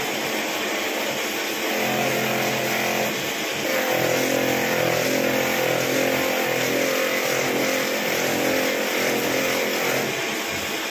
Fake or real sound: real